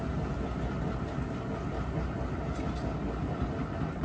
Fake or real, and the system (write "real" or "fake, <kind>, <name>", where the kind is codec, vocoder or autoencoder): real